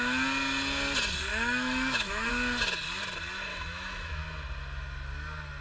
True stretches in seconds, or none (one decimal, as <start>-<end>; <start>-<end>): 0.0-1.3; 2.3-3.5; 4.2-5.6